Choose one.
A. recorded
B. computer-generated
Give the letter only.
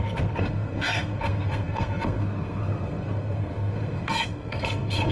B